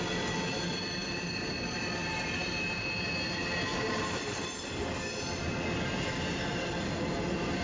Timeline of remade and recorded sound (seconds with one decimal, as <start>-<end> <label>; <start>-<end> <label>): 0.0-1.0 recorded; 1.0-1.5 remade; 1.5-2.0 recorded; 2.0-2.5 remade; 2.5-3.7 recorded; 3.7-4.8 remade; 4.8-7.6 recorded